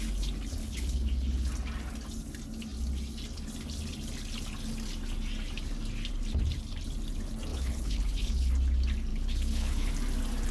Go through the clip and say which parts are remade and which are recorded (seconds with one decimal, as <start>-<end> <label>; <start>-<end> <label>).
0.0-0.6 recorded; 0.6-1.5 remade; 1.5-7.5 recorded; 7.5-8.5 remade; 8.5-9.1 recorded; 9.1-9.9 remade; 9.9-10.5 recorded